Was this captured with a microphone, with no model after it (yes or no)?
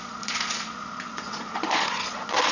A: no